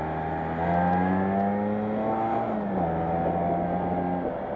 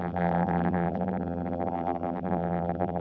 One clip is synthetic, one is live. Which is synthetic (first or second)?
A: second